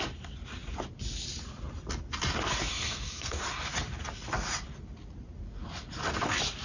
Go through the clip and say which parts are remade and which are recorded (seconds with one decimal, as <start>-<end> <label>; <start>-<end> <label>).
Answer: 0.0-2.7 recorded; 2.7-3.4 remade; 3.4-6.6 recorded